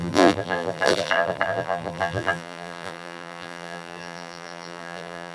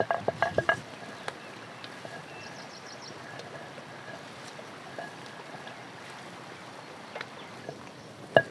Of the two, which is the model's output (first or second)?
first